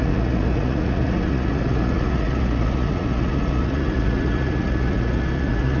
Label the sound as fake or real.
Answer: fake